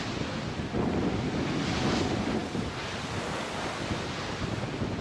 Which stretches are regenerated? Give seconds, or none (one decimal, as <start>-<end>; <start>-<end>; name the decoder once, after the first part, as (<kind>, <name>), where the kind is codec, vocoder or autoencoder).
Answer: none